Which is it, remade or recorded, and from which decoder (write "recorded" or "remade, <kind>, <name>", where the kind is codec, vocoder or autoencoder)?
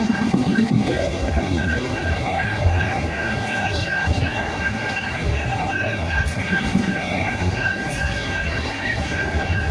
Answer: remade, codec, SNAC